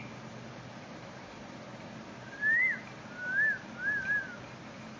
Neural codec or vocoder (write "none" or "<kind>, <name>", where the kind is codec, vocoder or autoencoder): none